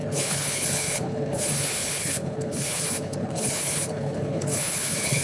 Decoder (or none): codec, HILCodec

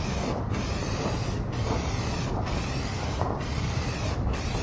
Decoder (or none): none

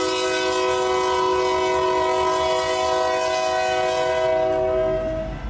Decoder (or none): none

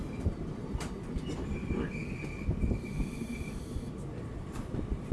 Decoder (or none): none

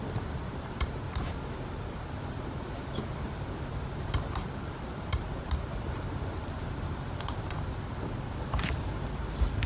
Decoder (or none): none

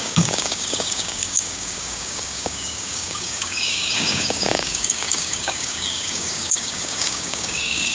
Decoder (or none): codec, DAC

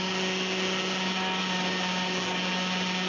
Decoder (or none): none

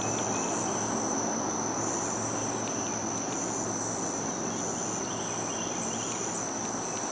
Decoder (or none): none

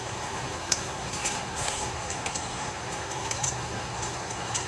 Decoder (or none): codec, SNAC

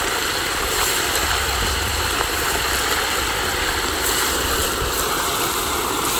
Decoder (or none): vocoder, BigVGAN v2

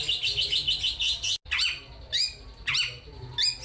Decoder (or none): none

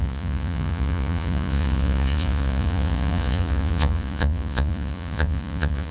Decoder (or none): vocoder, Vocos